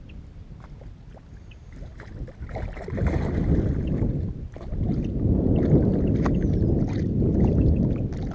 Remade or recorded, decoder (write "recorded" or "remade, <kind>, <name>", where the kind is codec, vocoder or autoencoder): recorded